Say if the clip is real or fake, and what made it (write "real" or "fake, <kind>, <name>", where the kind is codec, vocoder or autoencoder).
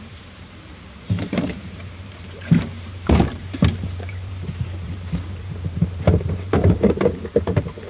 fake, vocoder, BigVGAN v2